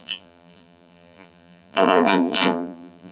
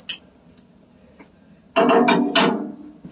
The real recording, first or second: second